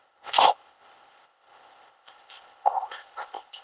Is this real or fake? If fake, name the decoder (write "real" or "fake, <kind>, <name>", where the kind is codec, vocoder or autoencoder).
fake, codec, ZipCodec